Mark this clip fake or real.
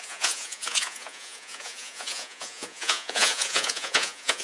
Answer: fake